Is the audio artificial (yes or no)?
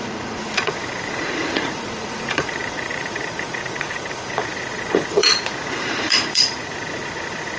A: yes